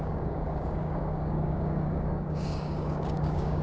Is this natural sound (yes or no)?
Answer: no